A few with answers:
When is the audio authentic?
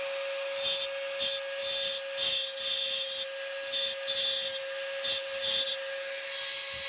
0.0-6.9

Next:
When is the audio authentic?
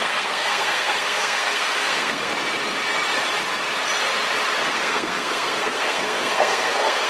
2.3-4.7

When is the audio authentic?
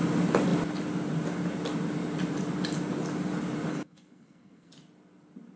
0.0-3.7; 4.7-5.6